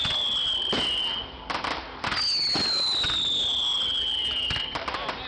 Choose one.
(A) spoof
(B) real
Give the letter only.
B